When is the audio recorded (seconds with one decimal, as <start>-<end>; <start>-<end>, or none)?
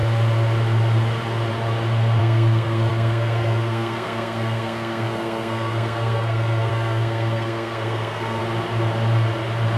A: 0.0-2.2; 8.4-9.8